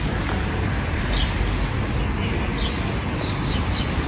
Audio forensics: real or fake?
real